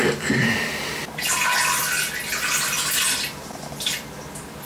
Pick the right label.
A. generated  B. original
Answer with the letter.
B